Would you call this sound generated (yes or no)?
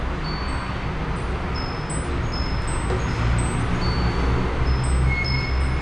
no